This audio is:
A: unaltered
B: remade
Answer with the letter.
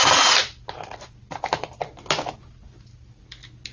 A